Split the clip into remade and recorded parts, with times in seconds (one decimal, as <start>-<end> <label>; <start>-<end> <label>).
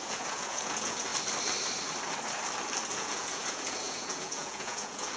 0.0-1.1 remade; 1.1-2.9 recorded; 2.9-5.2 remade